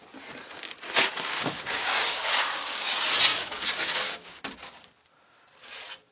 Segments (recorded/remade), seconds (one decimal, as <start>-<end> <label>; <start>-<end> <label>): 0.0-1.1 recorded; 1.1-2.9 remade; 2.9-3.3 recorded; 3.3-4.4 remade; 4.4-6.1 recorded